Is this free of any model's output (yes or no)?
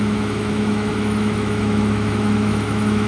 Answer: no